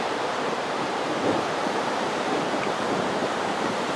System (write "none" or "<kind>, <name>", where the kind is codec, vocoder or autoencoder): vocoder, BigVGAN v2